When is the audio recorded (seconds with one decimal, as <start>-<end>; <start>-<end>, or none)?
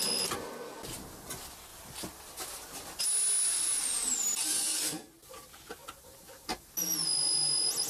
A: 0.0-1.7; 3.0-3.5; 5.3-7.9